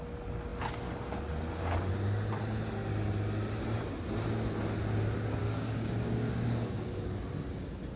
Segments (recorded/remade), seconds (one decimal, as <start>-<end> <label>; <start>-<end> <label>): 0.0-5.4 recorded; 5.4-7.2 remade; 7.2-8.0 recorded

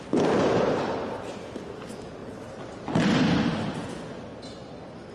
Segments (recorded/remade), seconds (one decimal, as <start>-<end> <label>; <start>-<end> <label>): 0.0-5.1 recorded

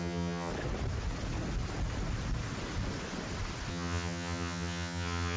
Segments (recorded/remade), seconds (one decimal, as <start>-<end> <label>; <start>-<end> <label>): 0.0-0.5 remade; 0.5-3.7 recorded; 3.7-5.4 remade